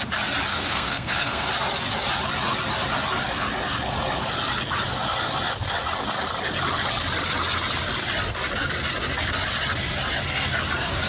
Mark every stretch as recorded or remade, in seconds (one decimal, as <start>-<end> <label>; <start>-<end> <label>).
0.0-0.5 recorded; 0.5-1.5 remade; 1.5-11.1 recorded

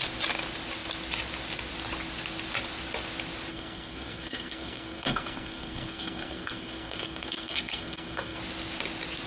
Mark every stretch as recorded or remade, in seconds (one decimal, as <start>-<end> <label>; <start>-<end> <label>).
0.0-3.5 recorded; 3.5-8.4 remade; 8.4-9.3 recorded

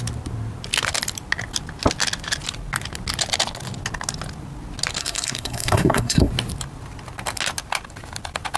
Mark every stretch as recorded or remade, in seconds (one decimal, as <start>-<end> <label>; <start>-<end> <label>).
0.0-5.0 recorded; 5.0-6.3 remade; 6.3-8.6 recorded

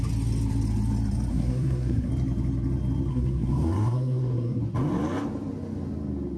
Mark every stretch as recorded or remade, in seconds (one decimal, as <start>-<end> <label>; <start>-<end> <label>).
0.0-1.3 recorded; 1.3-2.1 remade; 2.1-3.1 recorded; 3.1-4.6 remade; 4.6-6.4 recorded

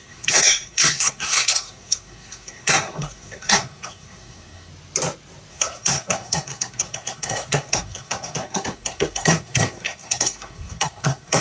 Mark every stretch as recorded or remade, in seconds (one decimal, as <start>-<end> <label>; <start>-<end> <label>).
0.0-4.7 remade; 4.7-5.5 recorded; 5.5-11.4 remade

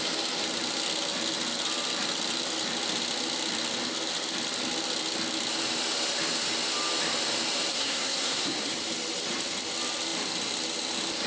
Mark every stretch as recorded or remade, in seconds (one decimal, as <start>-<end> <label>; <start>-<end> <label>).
0.0-7.7 recorded; 7.7-8.7 remade; 8.7-11.3 recorded

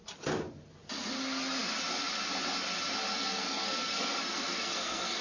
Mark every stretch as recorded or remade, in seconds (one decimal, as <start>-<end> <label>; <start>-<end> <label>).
0.0-3.1 recorded; 3.1-5.2 remade

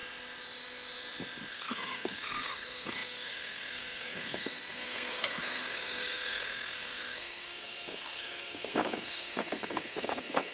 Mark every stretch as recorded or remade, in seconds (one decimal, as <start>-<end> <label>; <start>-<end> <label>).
0.0-1.5 recorded; 1.5-10.5 remade